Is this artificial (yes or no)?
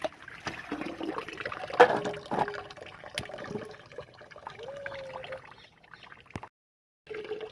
no